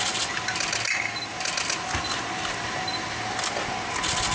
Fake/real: real